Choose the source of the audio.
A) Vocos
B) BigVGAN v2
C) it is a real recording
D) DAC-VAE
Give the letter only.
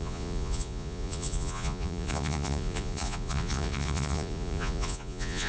A